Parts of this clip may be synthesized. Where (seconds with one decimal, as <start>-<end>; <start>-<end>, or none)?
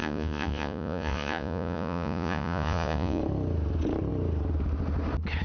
0.0-3.2